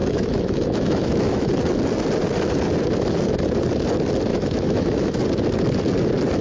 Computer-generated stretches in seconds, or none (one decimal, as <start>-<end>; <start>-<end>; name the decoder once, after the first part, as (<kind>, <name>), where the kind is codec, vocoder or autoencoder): 0.0-1.5 (autoencoder, DAC-VAE); 4.3-5.2